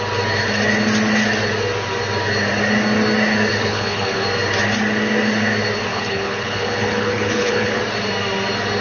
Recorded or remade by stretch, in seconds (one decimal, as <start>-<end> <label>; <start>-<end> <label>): 0.0-3.5 recorded; 3.5-4.2 remade; 4.2-5.9 recorded; 5.9-7.8 remade; 7.8-8.8 recorded